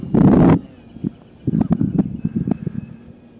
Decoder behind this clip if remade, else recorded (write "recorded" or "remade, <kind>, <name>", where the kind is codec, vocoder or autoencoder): recorded